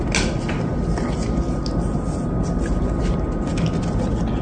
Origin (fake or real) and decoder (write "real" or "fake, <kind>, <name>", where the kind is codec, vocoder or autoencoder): real